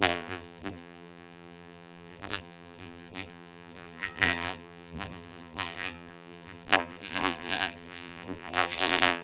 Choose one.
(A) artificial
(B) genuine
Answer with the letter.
A